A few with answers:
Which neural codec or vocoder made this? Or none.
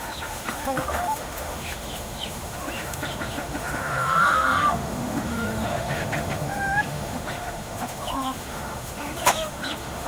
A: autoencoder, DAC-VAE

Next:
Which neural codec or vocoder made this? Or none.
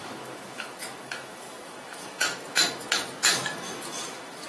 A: autoencoder, DAC-VAE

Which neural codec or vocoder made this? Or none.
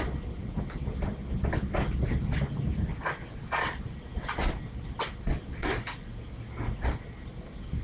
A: none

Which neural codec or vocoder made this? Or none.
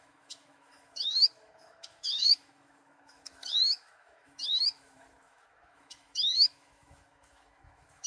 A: autoencoder, DAC-VAE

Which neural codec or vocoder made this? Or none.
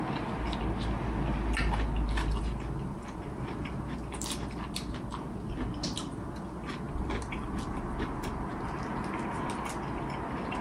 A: none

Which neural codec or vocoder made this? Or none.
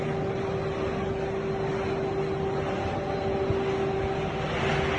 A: none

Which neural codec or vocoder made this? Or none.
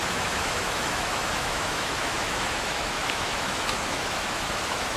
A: autoencoder, DAC-VAE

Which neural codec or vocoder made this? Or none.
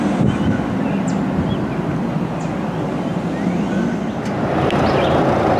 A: none